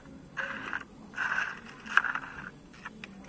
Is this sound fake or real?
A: real